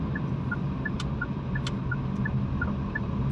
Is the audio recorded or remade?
recorded